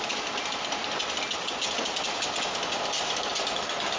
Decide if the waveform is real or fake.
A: real